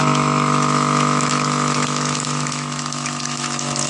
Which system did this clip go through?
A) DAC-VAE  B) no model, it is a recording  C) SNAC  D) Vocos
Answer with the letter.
A